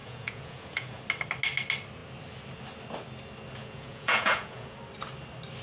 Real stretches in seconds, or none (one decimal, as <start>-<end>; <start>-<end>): 1.0-3.6; 4.8-5.6